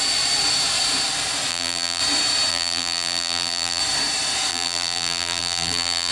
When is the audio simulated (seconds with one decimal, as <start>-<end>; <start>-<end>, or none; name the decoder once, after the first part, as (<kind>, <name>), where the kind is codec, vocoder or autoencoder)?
1.5-2.0 (vocoder, BigVGAN v2); 2.5-3.8; 4.5-6.1